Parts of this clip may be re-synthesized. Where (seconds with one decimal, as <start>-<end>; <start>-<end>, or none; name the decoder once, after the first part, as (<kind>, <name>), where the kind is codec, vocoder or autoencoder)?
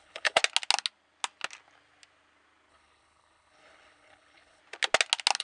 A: 0.0-0.4 (codec, HILCodec); 2.7-4.6